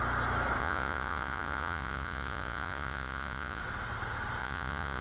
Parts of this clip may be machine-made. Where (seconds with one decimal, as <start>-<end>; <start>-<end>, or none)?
0.6-3.6; 4.4-5.0